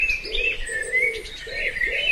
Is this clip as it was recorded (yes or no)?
no